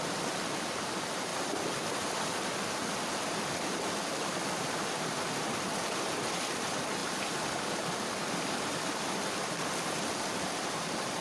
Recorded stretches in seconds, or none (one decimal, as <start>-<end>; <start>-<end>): 1.3-3.2